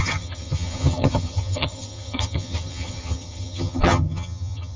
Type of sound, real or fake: fake